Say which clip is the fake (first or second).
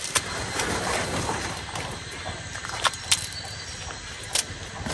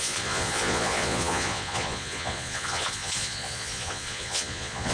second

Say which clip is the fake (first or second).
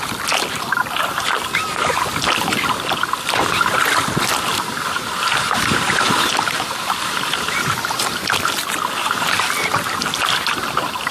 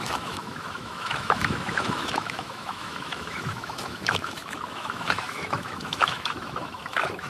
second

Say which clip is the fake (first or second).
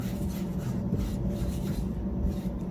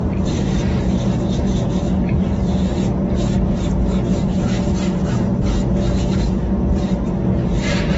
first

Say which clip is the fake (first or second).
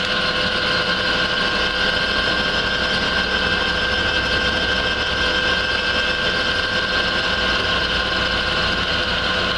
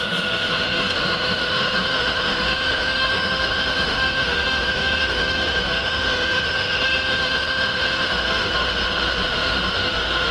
second